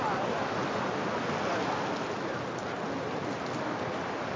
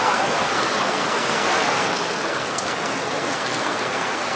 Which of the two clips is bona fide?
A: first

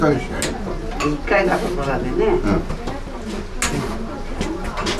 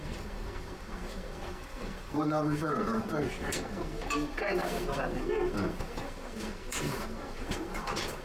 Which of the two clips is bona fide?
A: first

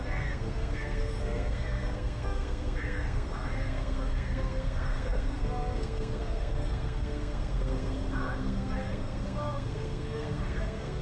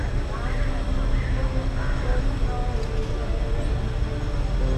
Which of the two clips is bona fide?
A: second